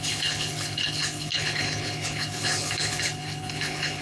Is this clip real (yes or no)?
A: no